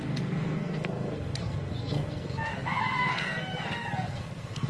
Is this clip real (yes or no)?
no